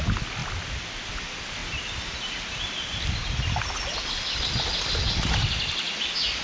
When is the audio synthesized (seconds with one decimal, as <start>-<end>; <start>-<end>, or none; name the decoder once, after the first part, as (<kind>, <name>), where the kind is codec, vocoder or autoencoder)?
none

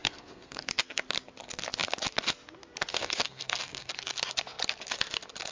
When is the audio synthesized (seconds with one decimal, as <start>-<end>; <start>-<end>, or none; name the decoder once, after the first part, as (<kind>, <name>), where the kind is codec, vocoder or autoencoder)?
0.0-0.7 (codec, SNAC); 2.9-3.9

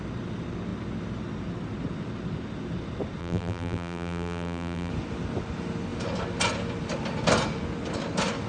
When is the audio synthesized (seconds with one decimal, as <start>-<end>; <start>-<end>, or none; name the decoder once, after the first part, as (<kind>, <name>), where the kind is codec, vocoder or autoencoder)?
3.2-4.9 (vocoder, BigVGAN v2)

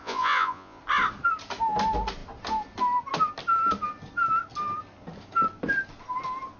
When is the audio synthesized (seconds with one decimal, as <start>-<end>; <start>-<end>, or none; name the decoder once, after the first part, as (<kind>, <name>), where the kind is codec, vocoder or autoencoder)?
0.0-0.8 (vocoder, Vocos)

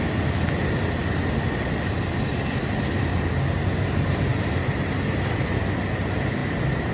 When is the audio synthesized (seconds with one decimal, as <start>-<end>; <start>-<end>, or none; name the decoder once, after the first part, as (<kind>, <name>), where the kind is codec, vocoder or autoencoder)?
none

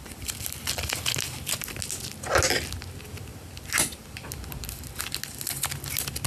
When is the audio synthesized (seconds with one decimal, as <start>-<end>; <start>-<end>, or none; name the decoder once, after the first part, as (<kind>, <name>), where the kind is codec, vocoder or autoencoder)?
none

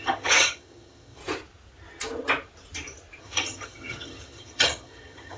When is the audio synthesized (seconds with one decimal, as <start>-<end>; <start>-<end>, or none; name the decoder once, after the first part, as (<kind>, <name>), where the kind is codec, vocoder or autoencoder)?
0.0-1.2 (vocoder, HiFi-GAN); 3.2-5.4

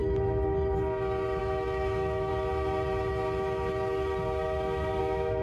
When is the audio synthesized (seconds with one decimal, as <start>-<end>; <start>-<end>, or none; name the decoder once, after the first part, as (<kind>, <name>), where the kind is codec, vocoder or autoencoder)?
1.4-2.3 (autoencoder, DAC-VAE); 5.0-5.4